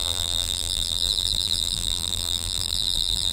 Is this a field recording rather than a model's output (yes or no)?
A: no